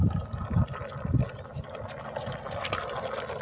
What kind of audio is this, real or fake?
real